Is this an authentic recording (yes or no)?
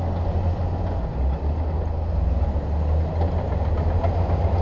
yes